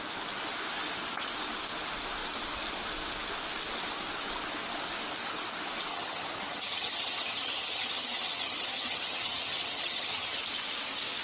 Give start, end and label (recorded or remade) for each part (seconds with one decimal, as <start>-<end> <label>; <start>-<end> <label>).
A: 0.0-5.9 recorded; 5.9-10.4 remade; 10.4-11.2 recorded